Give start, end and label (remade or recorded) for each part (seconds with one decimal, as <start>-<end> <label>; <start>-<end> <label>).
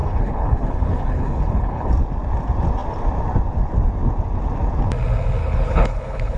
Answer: 0.0-1.9 remade; 1.9-5.4 recorded; 5.4-6.4 remade